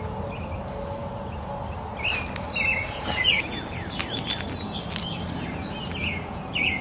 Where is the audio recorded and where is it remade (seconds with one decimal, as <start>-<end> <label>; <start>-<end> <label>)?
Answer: 0.0-1.0 recorded; 1.0-1.5 remade; 1.5-2.7 recorded; 2.7-3.6 remade; 3.6-6.0 recorded; 6.0-6.8 remade